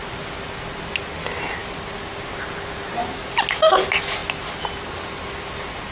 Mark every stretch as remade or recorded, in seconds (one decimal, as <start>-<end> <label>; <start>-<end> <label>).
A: 0.0-5.9 recorded